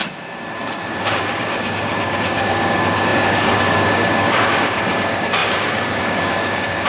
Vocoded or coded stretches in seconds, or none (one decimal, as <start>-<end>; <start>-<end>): 1.1-6.9

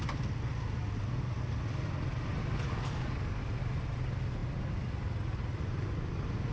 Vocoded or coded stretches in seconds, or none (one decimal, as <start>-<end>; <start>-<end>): 2.4-3.4

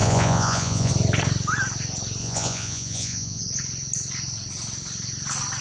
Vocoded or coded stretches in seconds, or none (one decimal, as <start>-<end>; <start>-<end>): 0.0-0.9; 2.2-3.4